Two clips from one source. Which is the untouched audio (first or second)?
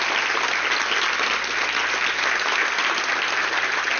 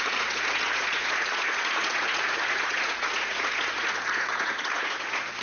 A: first